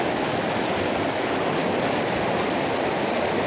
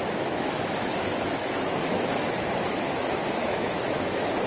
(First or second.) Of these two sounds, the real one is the first